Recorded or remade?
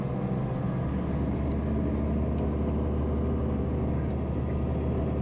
recorded